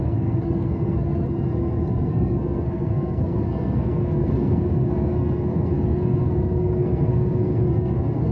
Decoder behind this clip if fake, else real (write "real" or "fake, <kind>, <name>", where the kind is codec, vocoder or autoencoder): fake, codec, SNAC